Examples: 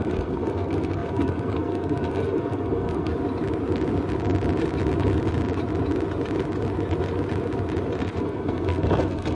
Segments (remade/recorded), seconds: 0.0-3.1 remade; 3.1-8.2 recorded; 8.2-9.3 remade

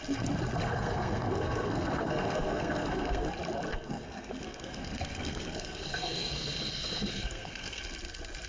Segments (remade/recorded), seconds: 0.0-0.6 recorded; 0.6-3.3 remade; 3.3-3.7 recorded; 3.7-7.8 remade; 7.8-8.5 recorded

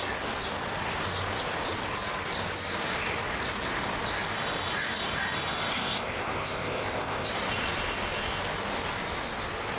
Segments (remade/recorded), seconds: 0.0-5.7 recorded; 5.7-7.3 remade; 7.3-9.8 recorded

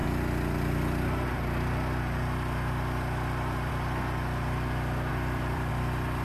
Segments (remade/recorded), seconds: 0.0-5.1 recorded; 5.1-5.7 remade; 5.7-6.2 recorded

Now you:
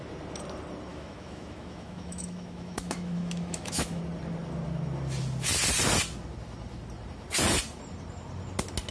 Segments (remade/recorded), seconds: 0.0-0.9 recorded; 0.9-4.0 remade; 4.0-8.9 recorded

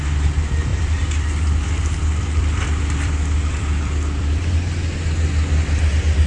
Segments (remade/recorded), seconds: 0.0-0.7 recorded; 0.7-4.5 remade; 4.5-6.3 recorded

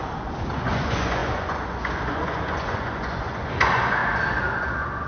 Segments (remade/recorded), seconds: 0.0-4.0 remade; 4.0-4.5 recorded; 4.5-5.1 remade